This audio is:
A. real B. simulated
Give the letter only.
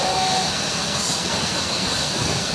B